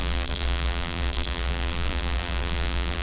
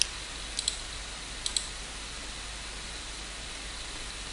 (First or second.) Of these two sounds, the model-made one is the first